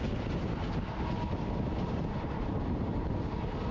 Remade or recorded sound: recorded